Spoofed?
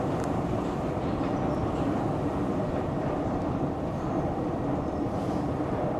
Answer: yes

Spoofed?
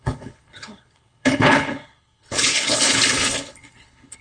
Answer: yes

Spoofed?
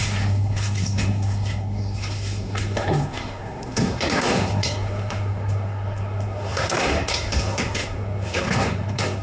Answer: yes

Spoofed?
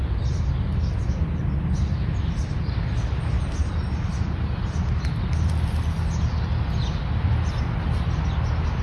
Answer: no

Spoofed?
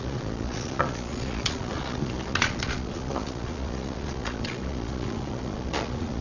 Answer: yes